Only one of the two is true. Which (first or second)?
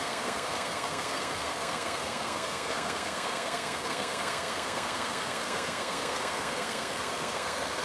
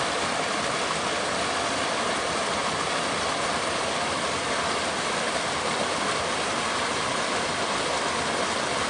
second